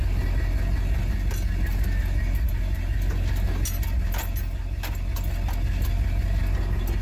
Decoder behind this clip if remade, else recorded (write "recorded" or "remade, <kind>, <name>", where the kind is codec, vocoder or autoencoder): recorded